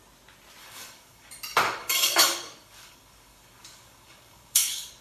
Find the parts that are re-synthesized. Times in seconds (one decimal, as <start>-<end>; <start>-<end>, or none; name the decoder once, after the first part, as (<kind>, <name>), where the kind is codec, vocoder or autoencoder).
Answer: 0.6-1.3 (codec, DAC); 1.8-5.0